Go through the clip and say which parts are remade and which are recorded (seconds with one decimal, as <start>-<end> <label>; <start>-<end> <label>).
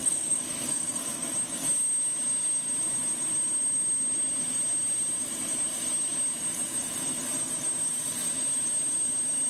0.0-1.3 remade; 1.3-9.5 recorded